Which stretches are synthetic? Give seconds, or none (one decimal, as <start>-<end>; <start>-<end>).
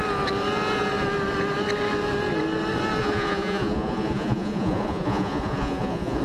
3.0-6.2